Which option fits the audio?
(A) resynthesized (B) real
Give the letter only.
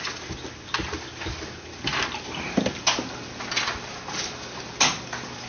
B